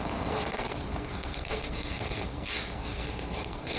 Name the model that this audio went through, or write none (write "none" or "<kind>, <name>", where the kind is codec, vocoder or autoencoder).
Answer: codec, SNAC